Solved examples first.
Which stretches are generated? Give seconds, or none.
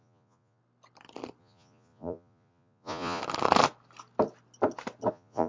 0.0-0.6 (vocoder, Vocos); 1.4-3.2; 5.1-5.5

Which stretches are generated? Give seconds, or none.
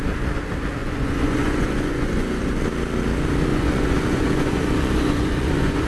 0.8-2.6 (vocoder, Vocos); 3.5-5.9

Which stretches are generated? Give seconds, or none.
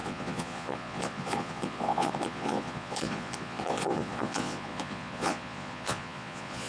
0.0-6.7 (vocoder, Vocos)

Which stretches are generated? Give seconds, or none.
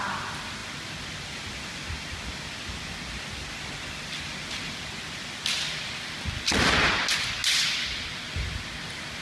none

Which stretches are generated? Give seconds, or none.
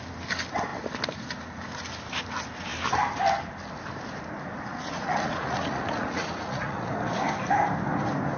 4.7-6.9 (vocoder, Vocos)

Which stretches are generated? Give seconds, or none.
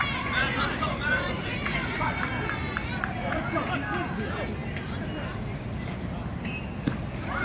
0.4-2.3 (vocoder, Vocos); 3.2-3.7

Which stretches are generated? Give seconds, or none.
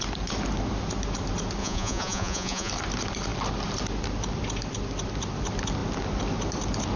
1.6-2.7 (vocoder, Vocos)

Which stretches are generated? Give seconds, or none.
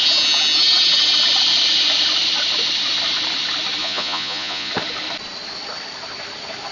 3.8-4.7 (vocoder, Vocos)